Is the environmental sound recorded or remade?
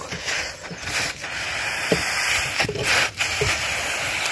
recorded